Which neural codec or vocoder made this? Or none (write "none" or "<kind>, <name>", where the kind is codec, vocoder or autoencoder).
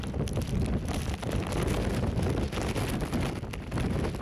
none